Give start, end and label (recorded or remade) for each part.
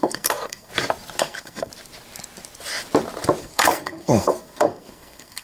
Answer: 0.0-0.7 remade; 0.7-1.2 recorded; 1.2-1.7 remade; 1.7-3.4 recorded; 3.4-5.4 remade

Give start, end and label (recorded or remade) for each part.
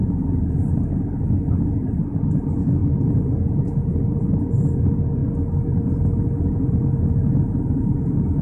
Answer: 0.0-8.4 recorded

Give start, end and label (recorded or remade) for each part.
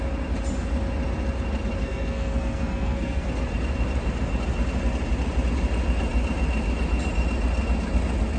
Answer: 0.0-1.8 recorded; 1.8-3.3 remade; 3.3-8.4 recorded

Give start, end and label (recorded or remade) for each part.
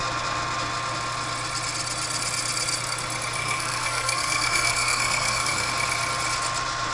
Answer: 0.0-3.4 recorded; 3.4-5.7 remade; 5.7-6.9 recorded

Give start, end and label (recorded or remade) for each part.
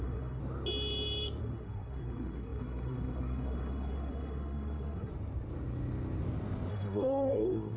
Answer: 0.0-0.4 remade; 0.4-1.4 recorded; 1.4-5.1 remade; 5.1-6.7 recorded; 6.7-7.8 remade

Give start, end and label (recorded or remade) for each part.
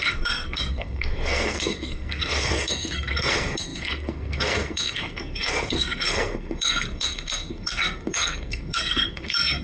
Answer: 0.0-9.6 remade